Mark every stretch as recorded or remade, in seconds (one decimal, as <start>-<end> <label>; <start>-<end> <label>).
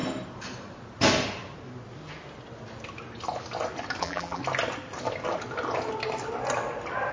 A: 0.0-4.0 recorded; 4.0-4.4 remade; 4.4-7.1 recorded